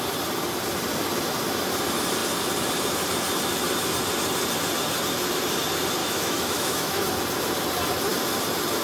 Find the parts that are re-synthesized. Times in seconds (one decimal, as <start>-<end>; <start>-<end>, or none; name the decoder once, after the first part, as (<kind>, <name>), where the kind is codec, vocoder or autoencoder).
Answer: 6.0-7.1 (autoencoder, DAC-VAE)